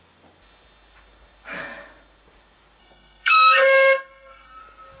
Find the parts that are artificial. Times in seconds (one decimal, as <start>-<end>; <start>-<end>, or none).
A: 2.8-4.6